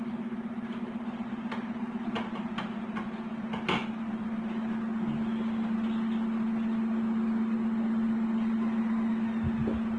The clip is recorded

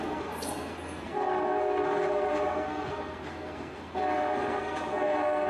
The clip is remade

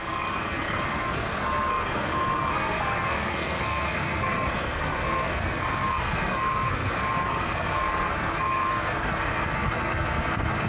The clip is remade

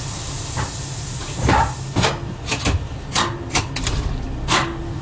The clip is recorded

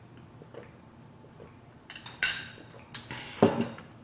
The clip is recorded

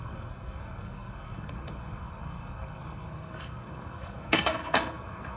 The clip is remade